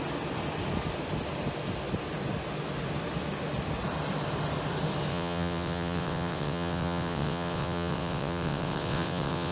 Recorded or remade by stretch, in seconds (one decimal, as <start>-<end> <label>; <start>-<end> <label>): 0.0-5.1 recorded; 5.1-9.5 remade